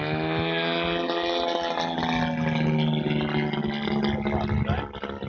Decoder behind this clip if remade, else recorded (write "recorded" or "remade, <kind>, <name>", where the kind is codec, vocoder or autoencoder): recorded